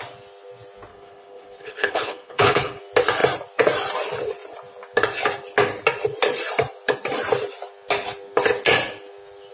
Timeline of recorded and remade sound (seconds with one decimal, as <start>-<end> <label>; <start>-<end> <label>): 0.0-0.9 recorded; 0.9-2.8 remade; 2.8-9.5 recorded